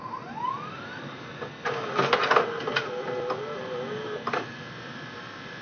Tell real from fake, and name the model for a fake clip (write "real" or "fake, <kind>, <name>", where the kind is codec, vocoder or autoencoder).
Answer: real